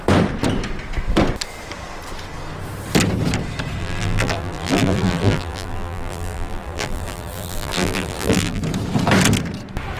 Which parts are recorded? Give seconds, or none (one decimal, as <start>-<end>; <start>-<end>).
0.0-3.8; 8.6-10.0